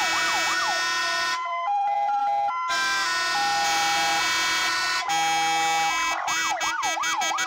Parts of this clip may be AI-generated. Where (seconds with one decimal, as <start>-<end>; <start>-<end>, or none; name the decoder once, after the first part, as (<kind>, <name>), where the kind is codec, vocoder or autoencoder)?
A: 1.0-2.2 (vocoder, BigVGAN v2); 4.6-5.1